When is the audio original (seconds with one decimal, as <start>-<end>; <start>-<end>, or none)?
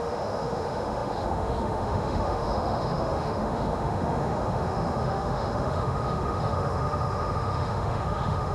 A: none